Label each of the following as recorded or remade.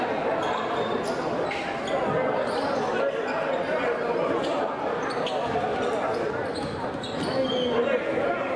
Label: recorded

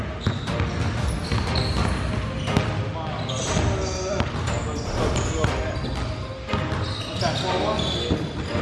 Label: recorded